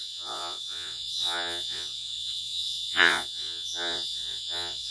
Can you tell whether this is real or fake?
fake